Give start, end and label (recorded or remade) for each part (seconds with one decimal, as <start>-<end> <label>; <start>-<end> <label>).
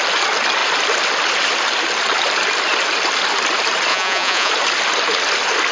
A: 0.0-3.9 recorded; 3.9-4.5 remade; 4.5-5.7 recorded